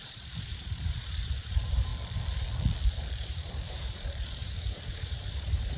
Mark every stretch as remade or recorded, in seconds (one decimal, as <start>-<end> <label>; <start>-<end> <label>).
0.0-1.9 remade; 1.9-3.1 recorded; 3.1-5.8 remade